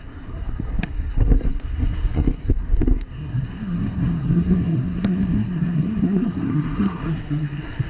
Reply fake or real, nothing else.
fake